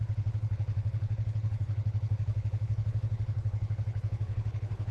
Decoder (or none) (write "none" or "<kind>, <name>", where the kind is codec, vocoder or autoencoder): codec, HILCodec